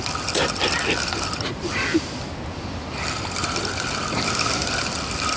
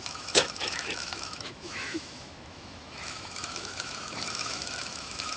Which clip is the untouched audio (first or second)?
first